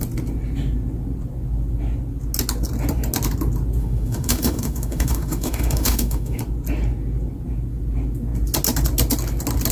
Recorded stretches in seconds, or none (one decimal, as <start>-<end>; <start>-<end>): 0.0-3.8; 6.4-9.7